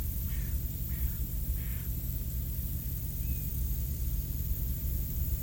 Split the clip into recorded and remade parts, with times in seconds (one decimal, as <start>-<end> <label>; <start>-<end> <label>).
0.0-1.3 remade; 1.3-4.5 recorded; 4.5-5.4 remade